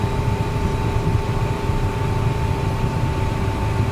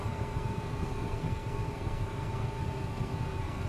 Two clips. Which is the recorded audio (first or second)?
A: first